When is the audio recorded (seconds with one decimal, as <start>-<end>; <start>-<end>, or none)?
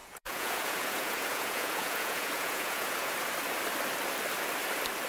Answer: 3.1-5.1